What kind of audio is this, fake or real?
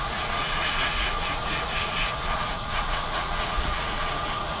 fake